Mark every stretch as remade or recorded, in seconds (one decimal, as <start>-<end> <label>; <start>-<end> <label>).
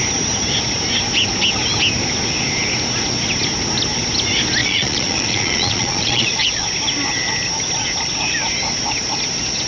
0.0-4.6 recorded; 4.6-6.7 remade; 6.7-9.7 recorded